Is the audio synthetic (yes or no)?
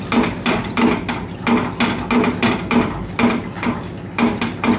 no